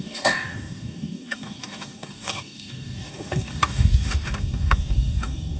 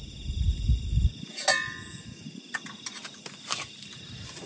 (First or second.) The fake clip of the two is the first